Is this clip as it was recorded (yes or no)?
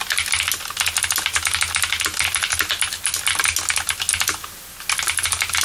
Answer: yes